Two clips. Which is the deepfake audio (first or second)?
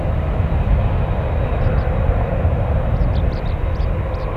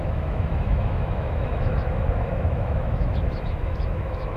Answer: second